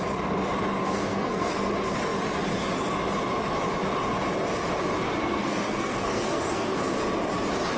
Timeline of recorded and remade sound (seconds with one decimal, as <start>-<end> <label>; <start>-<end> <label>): 0.0-0.8 recorded; 0.8-1.7 remade; 1.7-5.2 recorded; 5.2-7.0 remade; 7.0-7.8 recorded